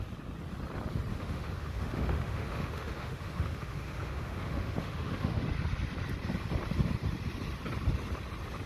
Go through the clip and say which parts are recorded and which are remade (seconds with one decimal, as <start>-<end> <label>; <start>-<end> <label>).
0.0-1.1 recorded; 1.1-5.4 remade; 5.4-8.7 recorded